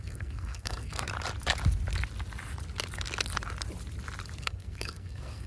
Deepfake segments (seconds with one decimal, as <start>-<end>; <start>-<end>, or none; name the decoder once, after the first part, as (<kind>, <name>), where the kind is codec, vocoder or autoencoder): 0.0-1.1 (codec, SNAC); 4.4-5.5